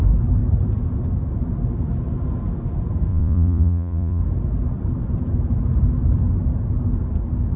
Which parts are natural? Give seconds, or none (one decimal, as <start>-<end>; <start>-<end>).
0.0-3.1; 4.2-7.6